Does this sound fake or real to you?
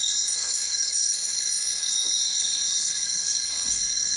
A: fake